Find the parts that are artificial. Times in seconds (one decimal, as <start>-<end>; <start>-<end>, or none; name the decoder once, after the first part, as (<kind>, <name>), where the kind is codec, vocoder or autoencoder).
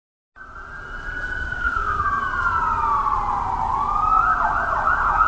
1.4-2.1 (codec, SNAC)